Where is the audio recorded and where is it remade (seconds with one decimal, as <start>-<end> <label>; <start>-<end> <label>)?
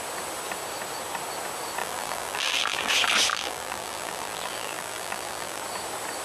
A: 0.0-1.8 recorded; 1.8-2.9 remade; 2.9-3.3 recorded; 3.3-5.6 remade; 5.6-6.2 recorded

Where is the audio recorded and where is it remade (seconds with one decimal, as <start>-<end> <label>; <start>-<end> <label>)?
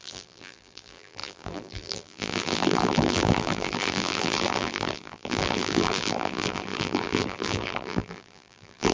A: 0.0-8.9 remade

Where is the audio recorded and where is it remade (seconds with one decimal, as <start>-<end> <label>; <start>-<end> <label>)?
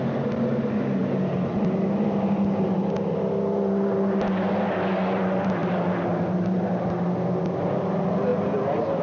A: 0.0-9.0 recorded